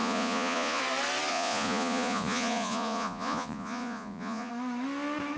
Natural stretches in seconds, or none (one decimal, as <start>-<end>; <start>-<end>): 0.8-1.3; 4.5-5.4